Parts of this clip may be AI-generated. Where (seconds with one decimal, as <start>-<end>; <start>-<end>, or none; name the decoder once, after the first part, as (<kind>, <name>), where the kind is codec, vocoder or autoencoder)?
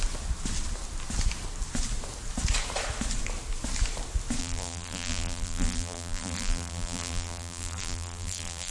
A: 4.4-8.7 (vocoder, BigVGAN v2)